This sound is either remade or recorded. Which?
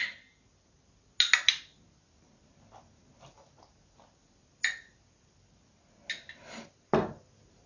recorded